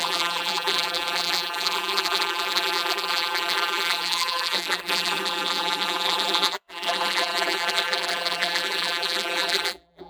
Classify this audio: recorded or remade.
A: remade